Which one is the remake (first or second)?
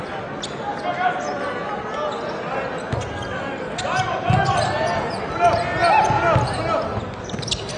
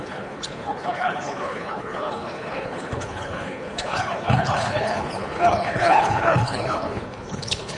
second